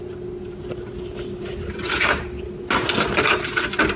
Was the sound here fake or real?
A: real